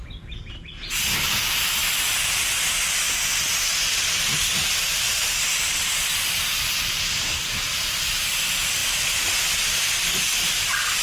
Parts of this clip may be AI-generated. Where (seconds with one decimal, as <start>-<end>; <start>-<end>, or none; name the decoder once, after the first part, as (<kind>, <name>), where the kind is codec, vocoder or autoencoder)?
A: none